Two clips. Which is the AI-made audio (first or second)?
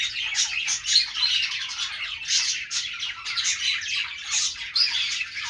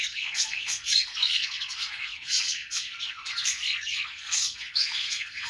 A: second